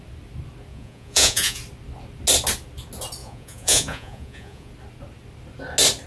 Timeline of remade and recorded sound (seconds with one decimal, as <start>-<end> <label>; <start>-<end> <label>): 0.0-0.7 recorded; 0.7-1.6 remade; 1.6-3.2 recorded; 3.2-4.7 remade; 4.7-6.1 recorded